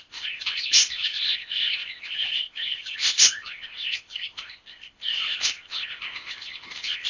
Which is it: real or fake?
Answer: fake